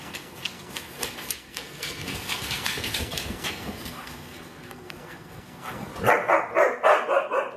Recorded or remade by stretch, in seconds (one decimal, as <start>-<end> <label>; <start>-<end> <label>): 0.0-5.9 remade; 5.9-7.6 recorded